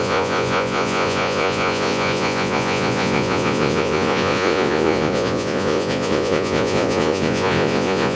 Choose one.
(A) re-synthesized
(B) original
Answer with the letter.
A